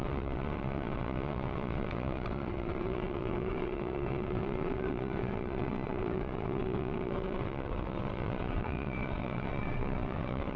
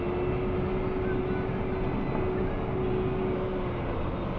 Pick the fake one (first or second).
first